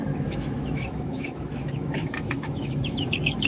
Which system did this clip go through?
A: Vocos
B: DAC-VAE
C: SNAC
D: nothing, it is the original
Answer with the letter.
B